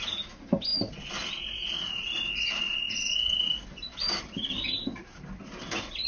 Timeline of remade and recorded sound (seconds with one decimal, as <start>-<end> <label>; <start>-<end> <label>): 0.0-6.1 recorded